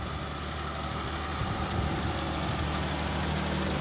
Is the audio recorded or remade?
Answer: recorded